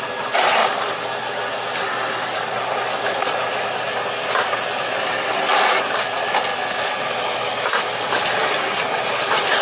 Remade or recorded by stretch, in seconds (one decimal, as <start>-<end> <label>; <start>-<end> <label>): 0.0-9.6 recorded